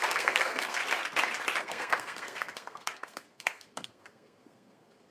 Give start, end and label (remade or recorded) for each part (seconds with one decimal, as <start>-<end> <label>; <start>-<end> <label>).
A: 0.0-0.8 remade; 0.8-1.6 recorded; 1.6-5.1 remade